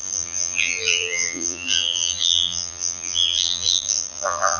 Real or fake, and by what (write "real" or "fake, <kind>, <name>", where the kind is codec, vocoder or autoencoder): fake, vocoder, BigVGAN v2